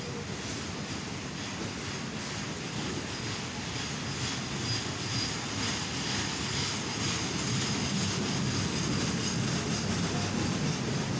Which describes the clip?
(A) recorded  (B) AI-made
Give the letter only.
A